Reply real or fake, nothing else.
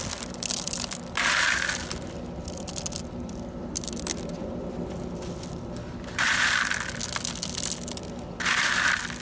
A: real